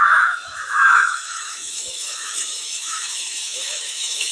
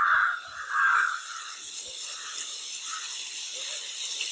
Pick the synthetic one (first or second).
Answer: first